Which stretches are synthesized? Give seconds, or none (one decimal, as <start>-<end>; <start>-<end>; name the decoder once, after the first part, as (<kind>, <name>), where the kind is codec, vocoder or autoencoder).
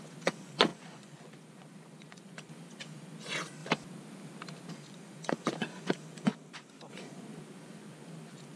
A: 0.0-3.6 (vocoder, Vocos); 4.7-6.3; 6.9-8.6